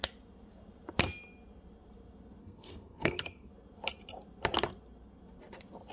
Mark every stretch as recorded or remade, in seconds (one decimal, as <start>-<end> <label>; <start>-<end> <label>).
0.0-2.4 recorded; 2.4-3.5 remade; 3.5-5.9 recorded